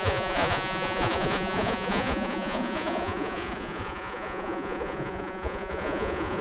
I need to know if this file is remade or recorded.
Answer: remade